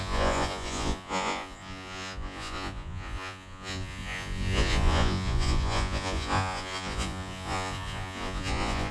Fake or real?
fake